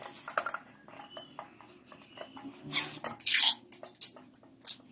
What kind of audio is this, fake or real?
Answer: real